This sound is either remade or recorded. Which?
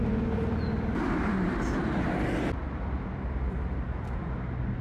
recorded